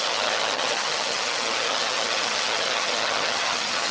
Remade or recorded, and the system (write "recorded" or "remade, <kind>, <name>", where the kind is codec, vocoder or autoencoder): remade, vocoder, HiFi-GAN